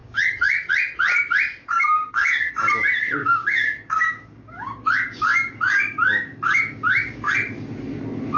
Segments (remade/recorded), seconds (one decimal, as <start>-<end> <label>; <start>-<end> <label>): 0.0-0.7 remade; 0.7-1.6 recorded; 1.6-2.5 remade; 2.5-3.2 recorded; 3.2-7.3 remade; 7.3-8.4 recorded